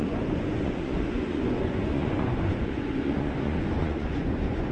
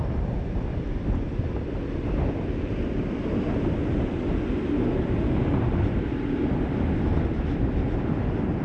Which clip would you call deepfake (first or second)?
first